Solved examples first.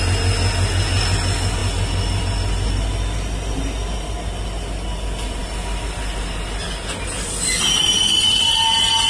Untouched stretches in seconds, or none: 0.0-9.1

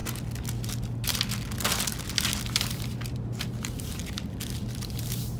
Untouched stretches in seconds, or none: 0.0-2.5; 4.0-4.9

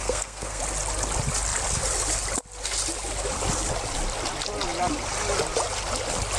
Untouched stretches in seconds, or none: 0.6-6.4

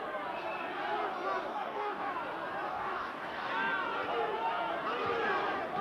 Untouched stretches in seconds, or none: 0.0-1.5; 2.1-2.7; 3.5-5.8